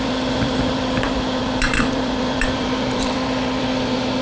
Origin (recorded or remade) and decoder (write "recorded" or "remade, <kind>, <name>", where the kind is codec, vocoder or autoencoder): remade, vocoder, BigVGAN v2